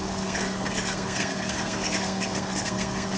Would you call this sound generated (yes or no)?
yes